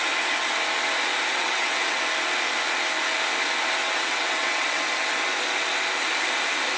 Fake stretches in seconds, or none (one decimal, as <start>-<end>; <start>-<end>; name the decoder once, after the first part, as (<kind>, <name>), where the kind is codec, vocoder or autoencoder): 1.3-2.0 (vocoder, WaveNeXt); 3.8-4.8